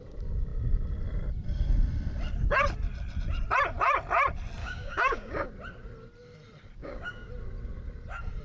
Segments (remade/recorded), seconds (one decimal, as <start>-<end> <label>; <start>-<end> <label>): 0.0-4.6 recorded; 4.6-5.5 remade; 5.5-6.8 recorded; 6.8-7.3 remade; 7.3-8.4 recorded

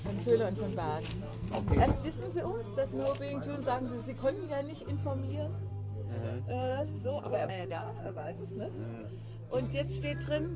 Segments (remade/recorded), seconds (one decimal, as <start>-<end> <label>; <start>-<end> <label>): 0.0-1.1 recorded; 1.1-1.7 remade; 1.7-6.5 recorded; 6.5-8.4 remade; 8.4-10.6 recorded

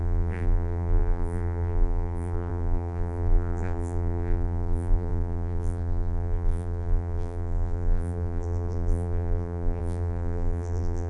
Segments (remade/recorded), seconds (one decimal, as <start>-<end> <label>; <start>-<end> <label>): 0.0-11.1 remade

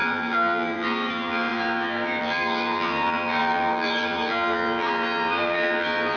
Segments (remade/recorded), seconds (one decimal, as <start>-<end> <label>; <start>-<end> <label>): 0.0-6.2 remade